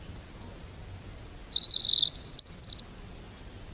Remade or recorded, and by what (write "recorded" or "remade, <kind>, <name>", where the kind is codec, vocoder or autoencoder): recorded